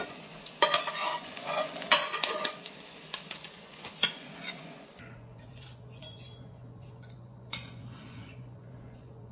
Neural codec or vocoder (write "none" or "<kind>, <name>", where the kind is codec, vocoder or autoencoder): vocoder, Vocos